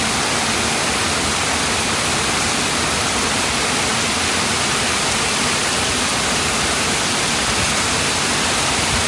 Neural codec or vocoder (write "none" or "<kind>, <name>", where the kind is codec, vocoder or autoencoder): none